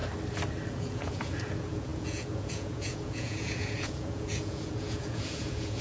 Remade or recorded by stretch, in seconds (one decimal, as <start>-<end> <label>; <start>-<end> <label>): 0.0-0.7 recorded; 0.7-5.8 remade